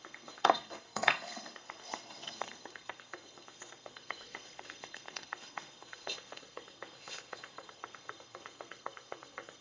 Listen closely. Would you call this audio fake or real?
fake